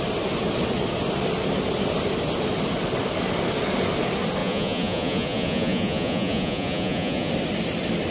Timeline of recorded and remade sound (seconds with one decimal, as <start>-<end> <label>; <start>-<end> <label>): 0.0-4.4 recorded; 4.4-7.3 remade; 7.3-8.1 recorded